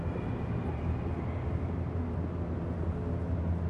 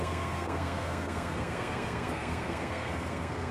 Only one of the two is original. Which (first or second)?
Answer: first